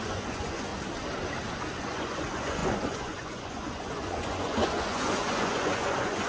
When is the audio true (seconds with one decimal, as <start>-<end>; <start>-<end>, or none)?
0.7-1.8